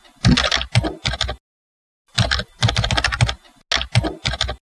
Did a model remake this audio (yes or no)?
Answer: no